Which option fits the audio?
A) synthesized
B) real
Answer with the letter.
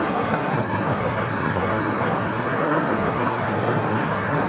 A